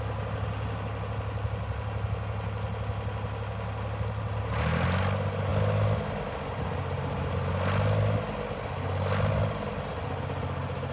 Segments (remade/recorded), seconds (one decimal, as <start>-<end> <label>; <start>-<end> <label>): 0.0-10.9 recorded